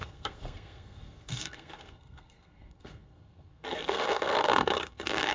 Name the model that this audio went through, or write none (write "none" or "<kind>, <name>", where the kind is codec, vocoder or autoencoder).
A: codec, SNAC